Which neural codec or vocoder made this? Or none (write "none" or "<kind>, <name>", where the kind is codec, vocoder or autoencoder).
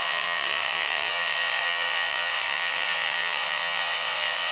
vocoder, WaveNeXt